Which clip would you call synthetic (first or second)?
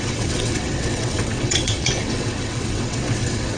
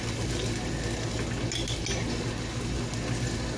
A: first